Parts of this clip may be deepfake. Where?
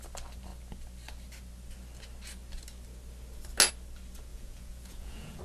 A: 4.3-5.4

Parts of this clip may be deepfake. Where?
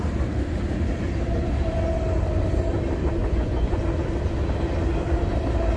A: 3.2-3.8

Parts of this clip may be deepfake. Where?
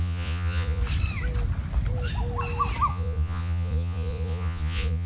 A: 0.0-0.8; 2.9-5.1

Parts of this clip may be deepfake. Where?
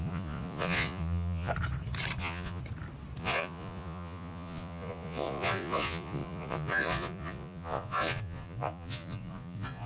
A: 0.0-1.5; 2.2-2.6; 3.2-9.9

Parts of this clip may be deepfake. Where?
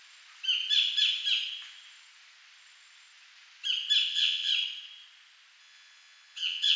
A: 4.1-4.5; 5.6-6.8